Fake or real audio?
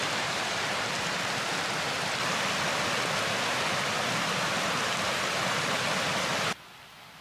real